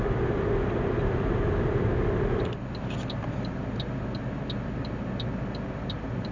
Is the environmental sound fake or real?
real